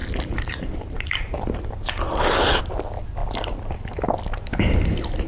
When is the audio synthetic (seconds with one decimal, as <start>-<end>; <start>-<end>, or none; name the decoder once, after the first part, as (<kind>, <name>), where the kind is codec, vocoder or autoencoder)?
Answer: 0.0-2.6 (vocoder, BigVGAN v2)